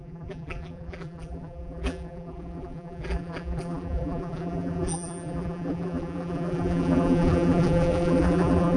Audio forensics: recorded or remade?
remade